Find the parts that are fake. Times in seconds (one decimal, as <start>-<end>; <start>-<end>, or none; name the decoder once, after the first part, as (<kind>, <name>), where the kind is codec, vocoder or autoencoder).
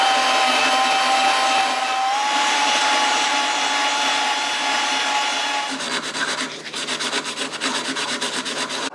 2.2-3.3 (vocoder, BigVGAN v2)